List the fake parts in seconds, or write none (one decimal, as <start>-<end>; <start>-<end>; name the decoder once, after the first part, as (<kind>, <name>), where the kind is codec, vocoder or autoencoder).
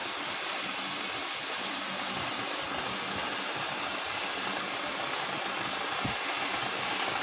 none